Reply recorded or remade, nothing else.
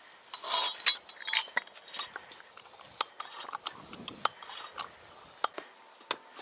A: recorded